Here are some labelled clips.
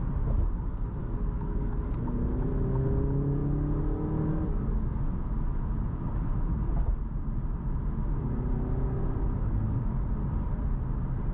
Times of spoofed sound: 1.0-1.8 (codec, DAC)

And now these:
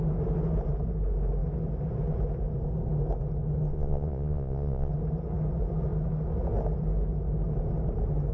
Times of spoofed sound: 3.7-4.9 (vocoder, Vocos)

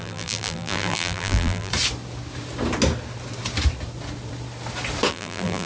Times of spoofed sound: 0.0-1.7 (vocoder, BigVGAN v2); 5.1-5.7

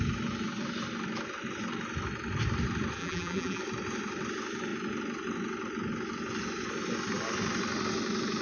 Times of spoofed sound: 3.0-3.6 (vocoder, BigVGAN v2)